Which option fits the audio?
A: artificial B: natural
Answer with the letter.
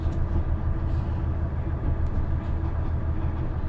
B